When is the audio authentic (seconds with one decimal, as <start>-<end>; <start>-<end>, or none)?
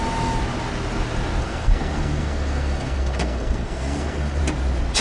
0.0-1.4; 4.4-5.0